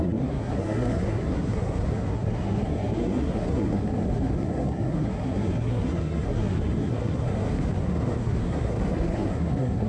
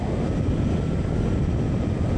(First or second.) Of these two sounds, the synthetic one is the first